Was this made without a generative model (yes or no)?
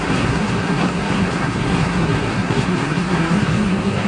no